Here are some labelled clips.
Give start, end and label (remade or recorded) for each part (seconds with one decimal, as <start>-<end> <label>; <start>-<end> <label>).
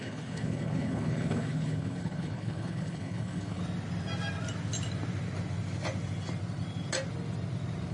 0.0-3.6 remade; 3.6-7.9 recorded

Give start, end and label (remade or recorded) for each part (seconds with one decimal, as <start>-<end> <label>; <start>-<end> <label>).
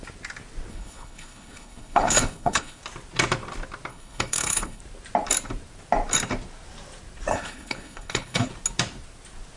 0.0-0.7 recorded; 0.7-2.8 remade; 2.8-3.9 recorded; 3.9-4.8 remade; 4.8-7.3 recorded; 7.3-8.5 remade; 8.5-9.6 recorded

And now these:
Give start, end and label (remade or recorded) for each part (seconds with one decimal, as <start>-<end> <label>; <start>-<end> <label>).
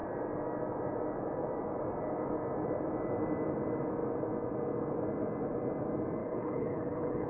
0.0-6.2 recorded; 6.2-7.3 remade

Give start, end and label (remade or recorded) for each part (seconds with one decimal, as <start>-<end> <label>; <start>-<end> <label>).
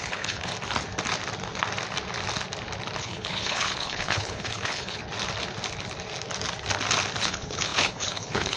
0.0-0.5 remade; 0.5-3.0 recorded; 3.0-5.0 remade; 5.0-7.2 recorded; 7.2-8.6 remade